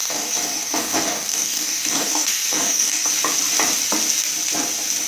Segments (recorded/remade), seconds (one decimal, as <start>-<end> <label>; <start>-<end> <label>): 0.0-3.1 remade; 3.1-5.1 recorded